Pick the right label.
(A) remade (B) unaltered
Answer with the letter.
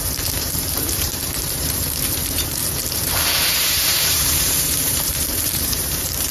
A